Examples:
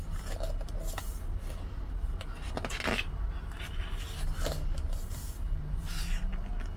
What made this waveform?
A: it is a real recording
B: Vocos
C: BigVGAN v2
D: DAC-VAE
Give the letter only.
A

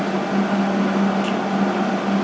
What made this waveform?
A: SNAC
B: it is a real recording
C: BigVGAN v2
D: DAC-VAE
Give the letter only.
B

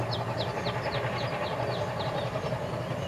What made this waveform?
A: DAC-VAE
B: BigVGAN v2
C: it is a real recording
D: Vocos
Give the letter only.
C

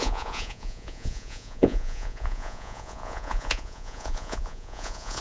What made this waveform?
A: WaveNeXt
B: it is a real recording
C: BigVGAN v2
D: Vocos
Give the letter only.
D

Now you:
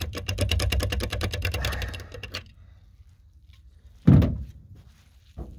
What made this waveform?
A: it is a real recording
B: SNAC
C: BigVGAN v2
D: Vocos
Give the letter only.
C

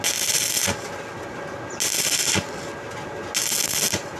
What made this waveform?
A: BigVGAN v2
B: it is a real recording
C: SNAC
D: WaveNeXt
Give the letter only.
B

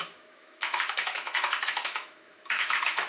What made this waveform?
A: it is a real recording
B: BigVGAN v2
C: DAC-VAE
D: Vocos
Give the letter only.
C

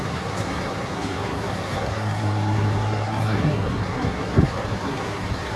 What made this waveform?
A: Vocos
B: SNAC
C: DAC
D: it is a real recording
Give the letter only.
B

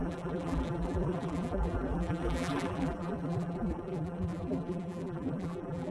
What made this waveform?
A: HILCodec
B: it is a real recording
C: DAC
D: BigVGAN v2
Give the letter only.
D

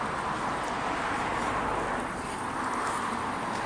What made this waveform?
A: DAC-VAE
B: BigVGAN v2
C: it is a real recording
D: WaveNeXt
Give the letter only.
C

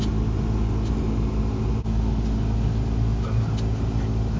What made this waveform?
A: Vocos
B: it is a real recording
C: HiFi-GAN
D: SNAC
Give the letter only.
B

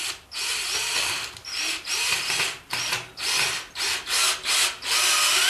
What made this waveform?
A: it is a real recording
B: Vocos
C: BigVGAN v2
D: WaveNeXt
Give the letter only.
A